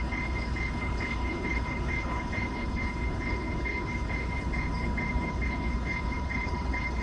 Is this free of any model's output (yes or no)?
no